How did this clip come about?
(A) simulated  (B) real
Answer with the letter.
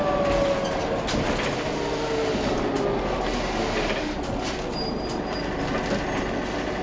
B